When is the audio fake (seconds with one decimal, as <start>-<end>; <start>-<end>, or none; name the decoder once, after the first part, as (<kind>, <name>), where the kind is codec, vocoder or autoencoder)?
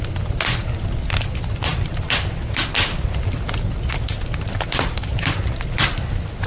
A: none